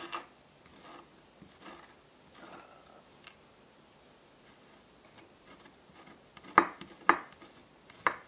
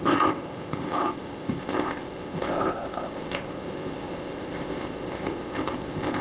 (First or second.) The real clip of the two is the first